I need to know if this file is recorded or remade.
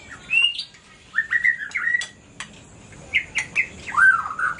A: recorded